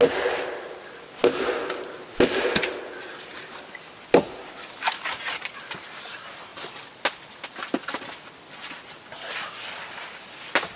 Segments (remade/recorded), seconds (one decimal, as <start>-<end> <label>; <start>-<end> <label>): 0.0-10.8 recorded